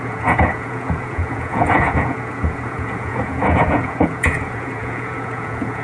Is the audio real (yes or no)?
no